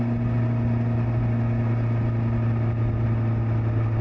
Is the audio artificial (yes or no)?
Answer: no